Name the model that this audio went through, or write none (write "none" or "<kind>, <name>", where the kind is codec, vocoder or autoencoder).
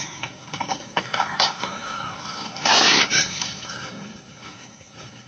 codec, SNAC